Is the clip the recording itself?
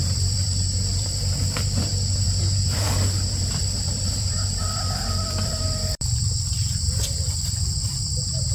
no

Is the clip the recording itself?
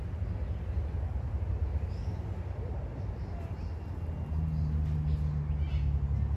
yes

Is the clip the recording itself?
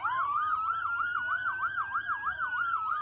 no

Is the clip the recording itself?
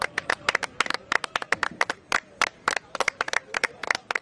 no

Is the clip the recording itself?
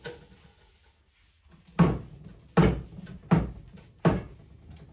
yes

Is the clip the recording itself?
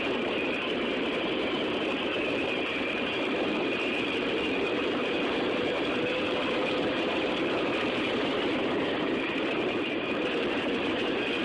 no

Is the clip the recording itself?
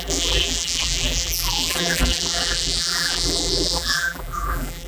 no